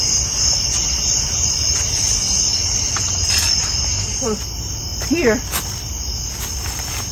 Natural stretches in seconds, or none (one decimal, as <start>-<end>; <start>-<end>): 0.0-2.5; 3.1-7.1